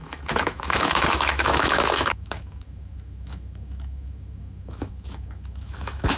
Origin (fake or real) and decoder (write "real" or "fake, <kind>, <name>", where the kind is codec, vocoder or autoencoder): fake, autoencoder, DAC-VAE